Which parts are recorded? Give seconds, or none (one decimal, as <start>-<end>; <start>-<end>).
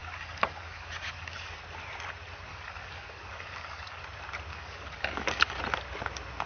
1.6-2.5; 4.0-4.5; 5.6-6.5